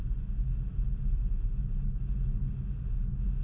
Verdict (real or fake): real